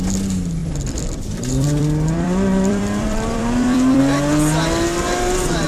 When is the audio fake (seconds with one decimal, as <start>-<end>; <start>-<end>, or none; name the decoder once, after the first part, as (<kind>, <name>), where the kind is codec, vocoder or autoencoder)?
0.6-4.0 (vocoder, BigVGAN v2)